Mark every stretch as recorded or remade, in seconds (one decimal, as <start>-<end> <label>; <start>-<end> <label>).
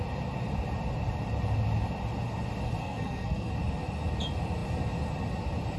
0.0-2.8 recorded; 2.8-3.5 remade; 3.5-5.8 recorded